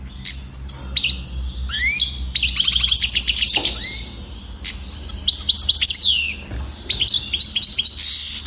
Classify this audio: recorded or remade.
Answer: recorded